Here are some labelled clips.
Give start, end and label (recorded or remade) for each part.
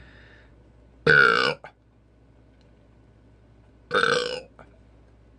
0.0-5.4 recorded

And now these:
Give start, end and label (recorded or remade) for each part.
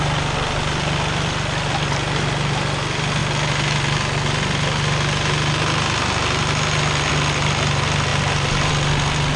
0.0-9.4 recorded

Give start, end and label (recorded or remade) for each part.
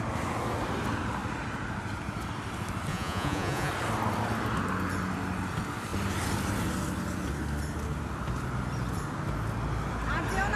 0.0-2.9 recorded; 2.9-3.7 remade; 3.7-10.6 recorded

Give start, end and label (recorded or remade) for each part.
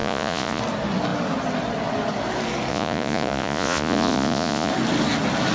0.0-0.6 remade; 0.6-2.7 recorded; 2.7-4.7 remade; 4.7-5.5 recorded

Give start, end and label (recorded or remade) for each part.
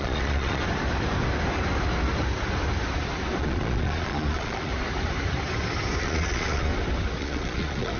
0.0-0.6 remade; 0.6-3.4 recorded; 3.4-4.7 remade; 4.7-6.0 recorded; 6.0-6.7 remade; 6.7-7.2 recorded; 7.2-8.0 remade